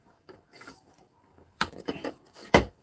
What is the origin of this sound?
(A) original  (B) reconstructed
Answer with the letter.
B